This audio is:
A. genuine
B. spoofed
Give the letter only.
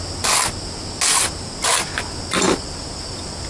A